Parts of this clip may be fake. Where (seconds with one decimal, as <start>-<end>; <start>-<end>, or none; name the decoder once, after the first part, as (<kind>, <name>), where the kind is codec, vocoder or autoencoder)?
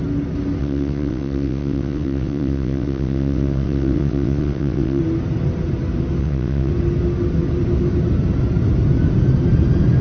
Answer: 0.6-5.0 (vocoder, WaveNeXt); 6.2-6.7